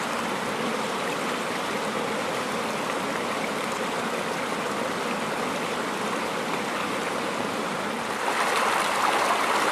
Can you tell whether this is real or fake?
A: real